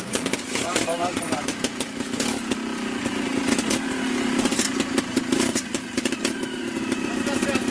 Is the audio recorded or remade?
remade